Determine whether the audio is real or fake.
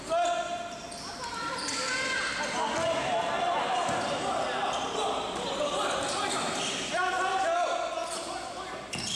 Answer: real